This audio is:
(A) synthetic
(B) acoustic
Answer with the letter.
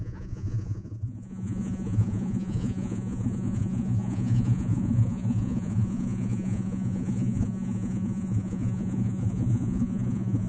A